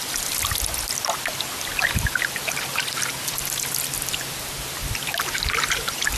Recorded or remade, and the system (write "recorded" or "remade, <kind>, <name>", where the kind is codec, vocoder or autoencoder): recorded